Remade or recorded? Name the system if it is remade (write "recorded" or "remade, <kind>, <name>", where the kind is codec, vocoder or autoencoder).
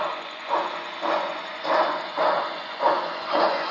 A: remade, vocoder, Vocos